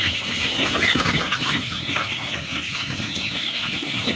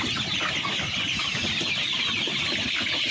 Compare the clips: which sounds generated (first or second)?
first